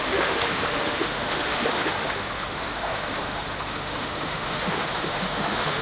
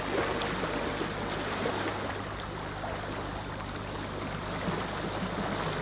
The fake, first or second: first